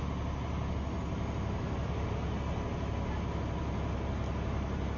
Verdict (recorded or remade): recorded